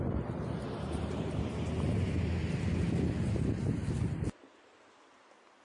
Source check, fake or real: real